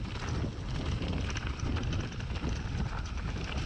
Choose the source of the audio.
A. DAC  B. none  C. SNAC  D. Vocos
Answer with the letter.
B